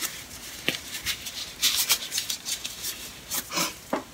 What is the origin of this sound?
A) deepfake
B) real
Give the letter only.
A